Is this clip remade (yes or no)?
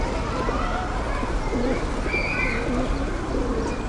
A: no